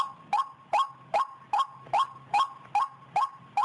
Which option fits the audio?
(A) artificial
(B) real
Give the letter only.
B